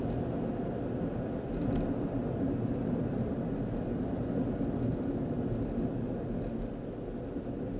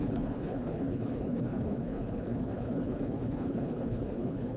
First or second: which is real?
first